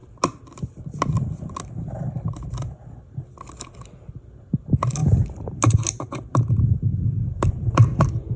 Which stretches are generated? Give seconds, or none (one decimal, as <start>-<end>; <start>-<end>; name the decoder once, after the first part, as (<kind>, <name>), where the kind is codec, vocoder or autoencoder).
5.0-8.4 (vocoder, BigVGAN v2)